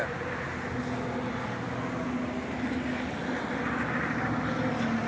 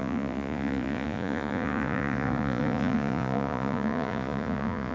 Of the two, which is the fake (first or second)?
second